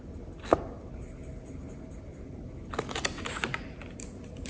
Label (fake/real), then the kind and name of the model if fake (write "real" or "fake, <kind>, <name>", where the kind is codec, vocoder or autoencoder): real